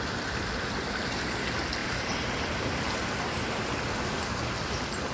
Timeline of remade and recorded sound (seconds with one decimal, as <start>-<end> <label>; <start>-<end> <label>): 0.0-1.8 recorded; 1.8-3.7 remade; 3.7-5.1 recorded